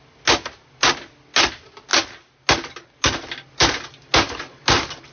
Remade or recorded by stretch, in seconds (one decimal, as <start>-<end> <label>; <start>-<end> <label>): 0.0-5.1 recorded